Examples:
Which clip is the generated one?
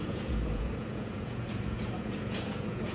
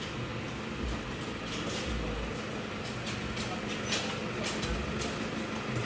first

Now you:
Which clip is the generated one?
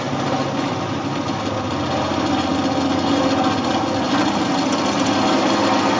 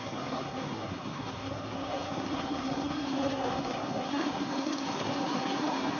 second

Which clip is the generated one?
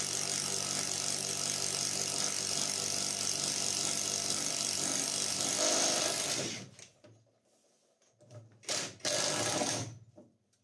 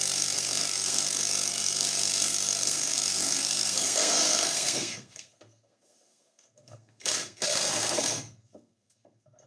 second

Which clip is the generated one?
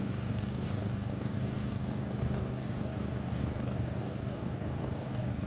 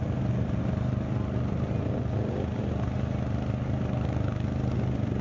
first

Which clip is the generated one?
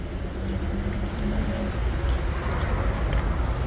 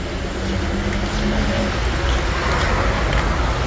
first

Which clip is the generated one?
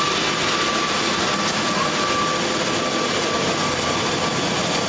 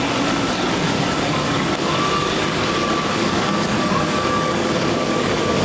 second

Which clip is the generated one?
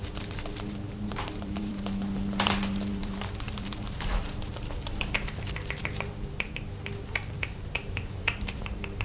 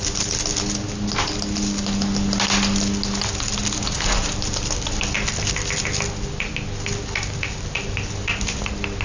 first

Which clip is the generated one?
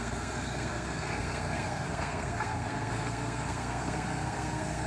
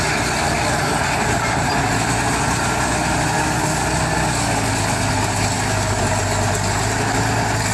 first